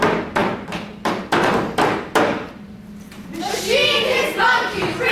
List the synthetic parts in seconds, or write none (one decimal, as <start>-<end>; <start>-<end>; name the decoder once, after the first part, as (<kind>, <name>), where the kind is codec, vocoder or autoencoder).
0.4-3.5 (vocoder, BigVGAN v2)